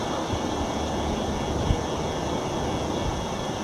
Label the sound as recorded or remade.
recorded